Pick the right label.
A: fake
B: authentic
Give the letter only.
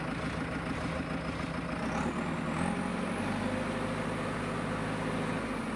B